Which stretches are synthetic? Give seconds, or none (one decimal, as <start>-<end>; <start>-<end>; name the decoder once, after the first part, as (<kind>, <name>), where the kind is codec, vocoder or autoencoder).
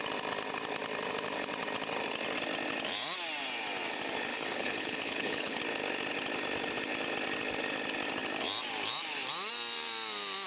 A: 4.3-5.6 (codec, HILCodec)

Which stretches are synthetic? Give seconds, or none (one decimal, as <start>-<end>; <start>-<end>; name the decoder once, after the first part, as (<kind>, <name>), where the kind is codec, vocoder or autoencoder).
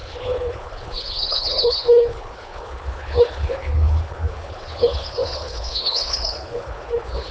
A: 0.0-7.3 (codec, HILCodec)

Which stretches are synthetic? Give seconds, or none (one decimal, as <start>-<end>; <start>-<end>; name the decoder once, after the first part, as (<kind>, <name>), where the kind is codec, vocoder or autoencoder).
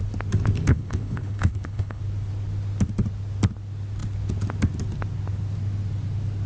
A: 0.7-2.0 (codec, HILCodec)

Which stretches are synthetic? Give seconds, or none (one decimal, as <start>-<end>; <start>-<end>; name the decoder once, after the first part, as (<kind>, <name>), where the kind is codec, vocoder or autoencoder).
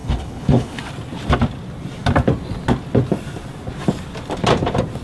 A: 0.0-0.8 (codec, HILCodec)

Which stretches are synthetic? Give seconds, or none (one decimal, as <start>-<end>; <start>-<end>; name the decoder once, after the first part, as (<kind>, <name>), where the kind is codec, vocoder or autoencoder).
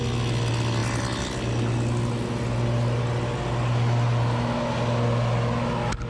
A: none